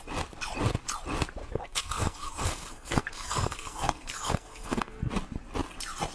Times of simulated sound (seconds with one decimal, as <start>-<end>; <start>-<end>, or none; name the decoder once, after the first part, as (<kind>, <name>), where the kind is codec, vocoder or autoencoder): 1.4-5.1 (codec, SNAC)